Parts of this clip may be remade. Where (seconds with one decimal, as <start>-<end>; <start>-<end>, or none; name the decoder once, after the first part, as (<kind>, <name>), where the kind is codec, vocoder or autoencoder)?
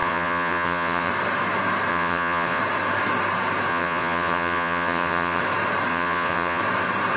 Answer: 0.0-1.1 (vocoder, Vocos); 1.9-2.6; 3.7-5.4; 5.9-6.6